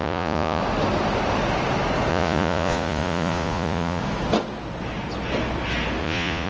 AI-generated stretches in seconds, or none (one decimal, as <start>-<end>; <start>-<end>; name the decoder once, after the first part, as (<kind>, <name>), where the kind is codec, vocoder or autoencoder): 0.0-0.6 (vocoder, Vocos); 2.1-4.0; 6.0-6.5